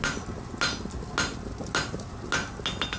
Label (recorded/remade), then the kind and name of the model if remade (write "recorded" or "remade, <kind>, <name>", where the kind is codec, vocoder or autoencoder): recorded